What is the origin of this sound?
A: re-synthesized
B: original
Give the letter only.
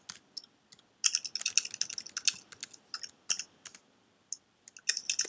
B